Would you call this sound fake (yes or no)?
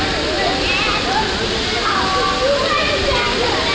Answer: no